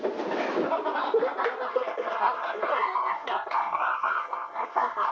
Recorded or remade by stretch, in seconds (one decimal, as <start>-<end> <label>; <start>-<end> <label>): 0.0-1.7 recorded; 1.7-5.1 remade